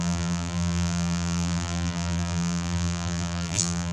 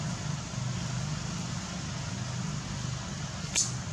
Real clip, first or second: second